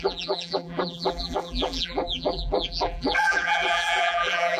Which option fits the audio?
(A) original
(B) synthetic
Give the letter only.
B